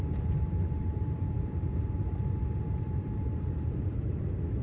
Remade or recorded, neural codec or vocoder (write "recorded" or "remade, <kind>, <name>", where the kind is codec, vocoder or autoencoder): remade, vocoder, BigVGAN v2